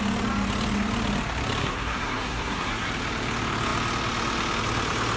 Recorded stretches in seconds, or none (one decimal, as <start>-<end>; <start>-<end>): 0.0-1.6; 2.9-5.2